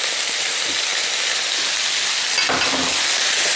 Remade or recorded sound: recorded